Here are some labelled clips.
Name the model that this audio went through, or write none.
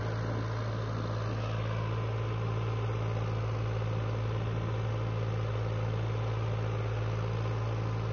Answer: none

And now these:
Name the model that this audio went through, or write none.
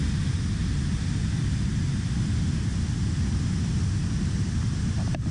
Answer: none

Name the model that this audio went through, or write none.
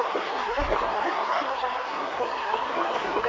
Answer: codec, SNAC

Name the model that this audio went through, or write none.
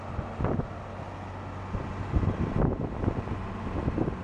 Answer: none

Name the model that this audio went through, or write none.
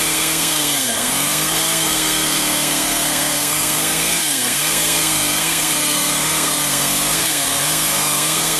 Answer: codec, SNAC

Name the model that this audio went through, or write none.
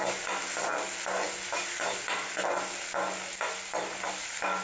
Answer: none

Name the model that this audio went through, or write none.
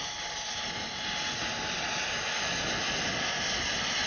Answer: none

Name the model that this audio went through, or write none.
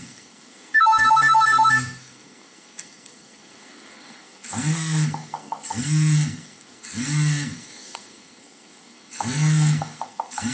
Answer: codec, SNAC